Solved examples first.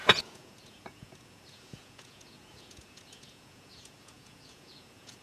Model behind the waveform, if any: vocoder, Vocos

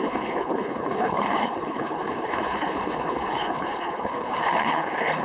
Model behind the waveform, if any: codec, HILCodec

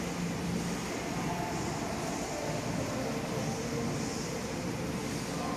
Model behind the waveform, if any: none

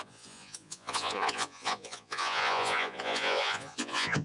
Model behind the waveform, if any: vocoder, Vocos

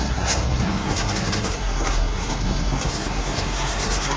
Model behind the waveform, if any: codec, SNAC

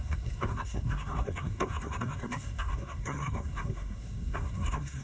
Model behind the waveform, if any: codec, SNAC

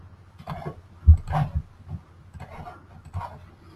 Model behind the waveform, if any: none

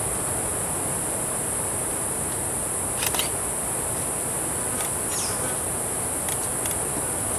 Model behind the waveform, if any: none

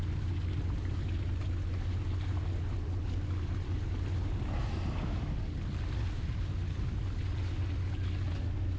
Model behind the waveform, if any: none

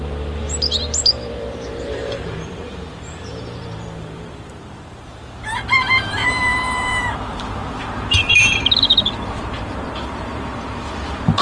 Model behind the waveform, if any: vocoder, BigVGAN v2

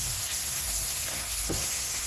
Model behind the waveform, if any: codec, SNAC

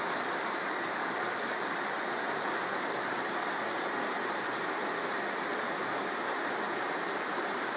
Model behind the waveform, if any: none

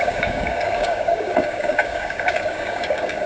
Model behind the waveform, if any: codec, DAC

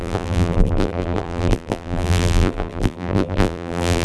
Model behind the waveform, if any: vocoder, BigVGAN v2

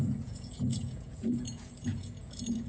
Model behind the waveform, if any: vocoder, Vocos